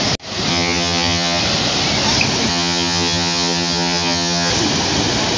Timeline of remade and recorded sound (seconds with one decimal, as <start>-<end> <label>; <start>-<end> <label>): 0.0-0.5 recorded; 0.5-1.4 remade; 1.4-2.5 recorded; 2.5-4.5 remade; 4.5-5.4 recorded